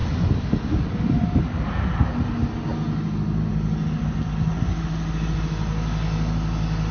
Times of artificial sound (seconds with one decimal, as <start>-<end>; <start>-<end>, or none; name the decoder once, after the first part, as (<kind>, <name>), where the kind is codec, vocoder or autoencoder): none